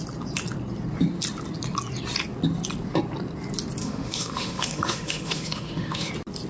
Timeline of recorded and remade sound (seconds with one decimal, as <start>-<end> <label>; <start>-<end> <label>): 0.0-3.8 recorded; 3.8-6.1 remade; 6.1-6.5 recorded